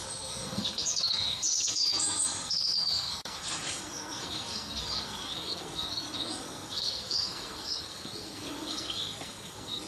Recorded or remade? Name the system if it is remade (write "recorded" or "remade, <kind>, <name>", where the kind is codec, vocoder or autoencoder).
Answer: remade, codec, SNAC